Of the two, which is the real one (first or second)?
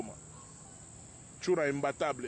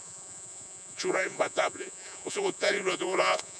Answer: first